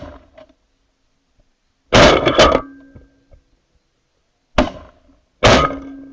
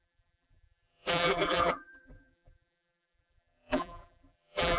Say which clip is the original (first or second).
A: first